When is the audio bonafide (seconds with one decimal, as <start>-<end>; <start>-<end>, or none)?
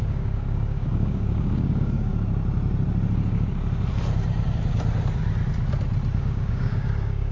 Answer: 2.1-6.2